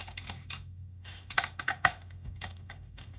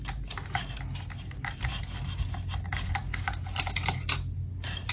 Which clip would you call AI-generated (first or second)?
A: first